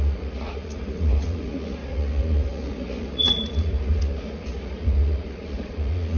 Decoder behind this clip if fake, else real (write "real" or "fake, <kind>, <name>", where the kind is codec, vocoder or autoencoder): fake, vocoder, Vocos